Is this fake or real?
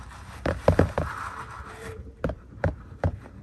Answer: fake